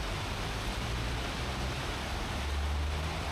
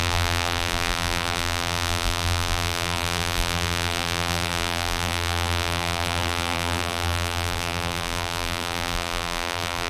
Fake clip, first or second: second